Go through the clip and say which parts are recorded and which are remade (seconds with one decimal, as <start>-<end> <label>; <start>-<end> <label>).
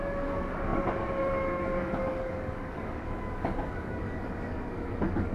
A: 0.0-5.3 remade